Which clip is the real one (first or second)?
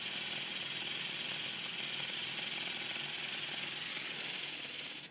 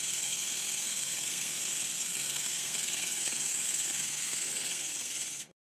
first